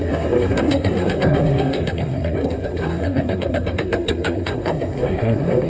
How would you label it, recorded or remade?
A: remade